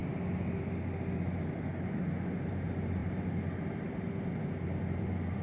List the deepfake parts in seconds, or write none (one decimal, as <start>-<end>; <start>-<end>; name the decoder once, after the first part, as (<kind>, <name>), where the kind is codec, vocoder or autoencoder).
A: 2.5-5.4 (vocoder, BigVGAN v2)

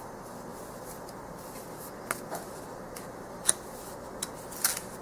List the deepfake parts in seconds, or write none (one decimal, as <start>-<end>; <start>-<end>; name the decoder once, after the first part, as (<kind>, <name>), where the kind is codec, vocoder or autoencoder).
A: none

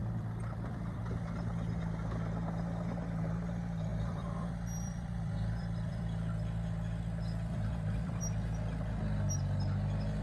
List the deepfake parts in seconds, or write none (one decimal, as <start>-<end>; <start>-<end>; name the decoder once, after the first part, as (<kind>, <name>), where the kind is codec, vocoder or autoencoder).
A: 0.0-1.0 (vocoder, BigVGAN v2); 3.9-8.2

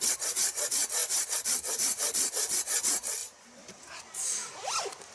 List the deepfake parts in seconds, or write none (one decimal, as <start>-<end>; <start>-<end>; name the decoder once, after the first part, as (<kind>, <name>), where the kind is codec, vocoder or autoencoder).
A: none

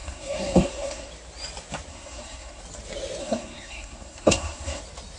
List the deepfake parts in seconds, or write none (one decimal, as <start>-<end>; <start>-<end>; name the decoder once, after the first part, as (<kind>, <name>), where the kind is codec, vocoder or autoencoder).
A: 0.0-1.1 (codec, SNAC); 1.9-2.6; 3.2-4.8

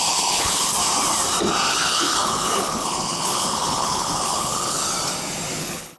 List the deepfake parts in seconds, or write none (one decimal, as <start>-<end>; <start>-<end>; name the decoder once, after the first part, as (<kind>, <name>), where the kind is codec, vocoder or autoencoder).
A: 0.0-0.7 (codec, HILCodec); 1.7-4.8; 5.6-6.0